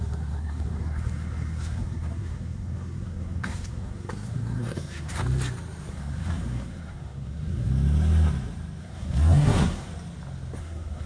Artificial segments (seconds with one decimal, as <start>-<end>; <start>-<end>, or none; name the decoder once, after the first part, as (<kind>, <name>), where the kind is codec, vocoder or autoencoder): 0.0-5.2 (codec, SNAC); 5.9-7.7; 8.8-9.9; 10.6-11.1